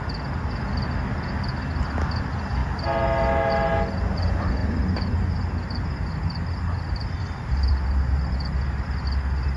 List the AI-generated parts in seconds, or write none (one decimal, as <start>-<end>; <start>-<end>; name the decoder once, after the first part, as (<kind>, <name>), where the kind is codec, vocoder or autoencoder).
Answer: none